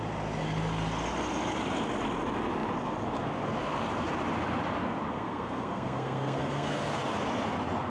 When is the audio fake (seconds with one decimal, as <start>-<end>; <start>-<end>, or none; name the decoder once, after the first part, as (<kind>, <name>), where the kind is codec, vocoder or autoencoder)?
5.1-6.8 (codec, SNAC)